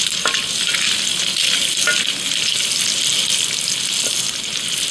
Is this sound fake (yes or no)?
no